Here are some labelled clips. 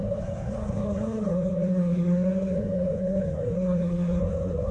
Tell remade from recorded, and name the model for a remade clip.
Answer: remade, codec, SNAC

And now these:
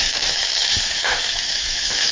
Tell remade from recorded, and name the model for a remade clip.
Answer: remade, autoencoder, DAC-VAE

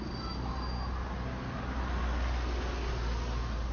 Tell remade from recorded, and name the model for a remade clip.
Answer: recorded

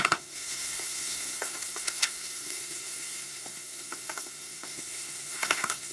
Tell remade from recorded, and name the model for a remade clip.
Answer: remade, codec, SNAC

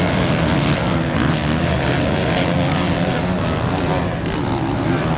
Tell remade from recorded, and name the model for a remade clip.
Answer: recorded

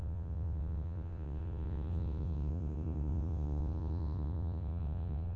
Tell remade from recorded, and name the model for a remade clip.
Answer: remade, vocoder, WaveNeXt